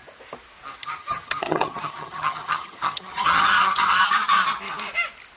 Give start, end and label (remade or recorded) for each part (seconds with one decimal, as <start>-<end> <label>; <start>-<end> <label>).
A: 0.0-0.8 recorded; 0.8-4.0 remade; 4.0-5.4 recorded